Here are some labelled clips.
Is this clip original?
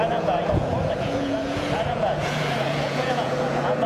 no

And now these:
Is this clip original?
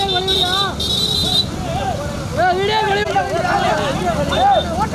yes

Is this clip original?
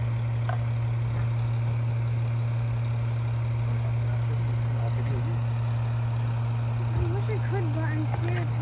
yes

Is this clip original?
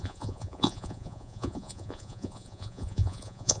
no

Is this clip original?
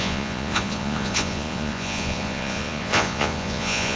no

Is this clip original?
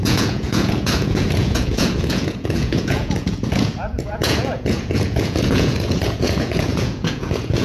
no